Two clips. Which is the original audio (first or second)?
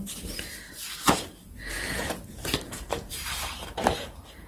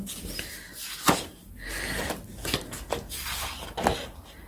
second